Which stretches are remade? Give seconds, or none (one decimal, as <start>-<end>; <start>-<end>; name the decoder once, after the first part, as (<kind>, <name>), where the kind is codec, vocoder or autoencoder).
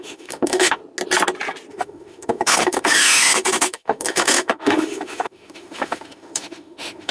0.0-0.8 (autoencoder, DAC-VAE); 1.7-7.1